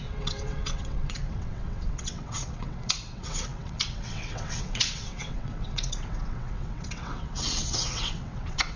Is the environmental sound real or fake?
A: fake